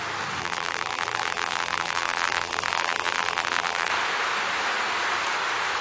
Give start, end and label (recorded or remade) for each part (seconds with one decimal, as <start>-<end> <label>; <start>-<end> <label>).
0.0-0.4 recorded; 0.4-3.9 remade; 3.9-5.8 recorded